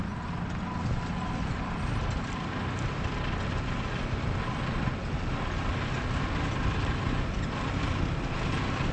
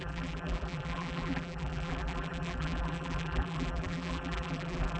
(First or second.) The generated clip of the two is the second